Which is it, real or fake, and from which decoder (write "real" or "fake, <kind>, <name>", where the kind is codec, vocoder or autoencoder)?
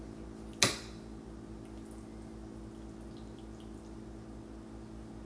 real